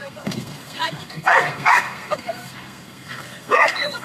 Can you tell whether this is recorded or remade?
remade